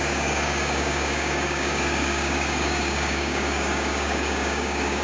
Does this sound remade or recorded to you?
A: remade